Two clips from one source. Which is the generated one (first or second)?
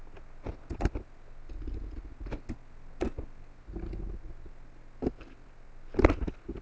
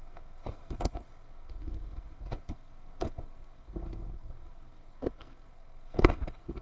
second